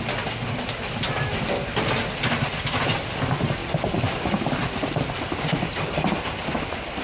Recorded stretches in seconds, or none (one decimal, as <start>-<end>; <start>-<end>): 0.0-3.6; 5.1-7.0